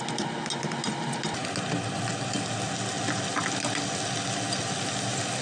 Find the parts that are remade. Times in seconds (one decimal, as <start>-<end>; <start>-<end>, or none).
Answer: none